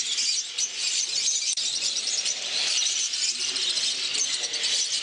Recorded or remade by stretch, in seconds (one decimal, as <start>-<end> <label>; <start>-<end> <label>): 0.0-0.8 recorded; 0.8-3.8 remade; 3.8-5.0 recorded